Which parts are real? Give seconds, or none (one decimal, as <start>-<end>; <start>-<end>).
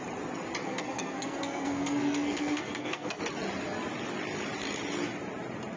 0.0-0.6; 3.2-5.8